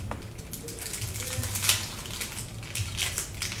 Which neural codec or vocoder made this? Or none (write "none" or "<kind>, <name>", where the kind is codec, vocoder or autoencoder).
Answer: none